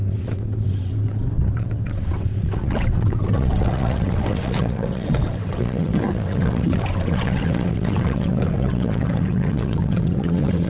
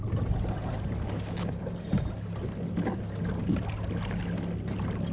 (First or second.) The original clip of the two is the second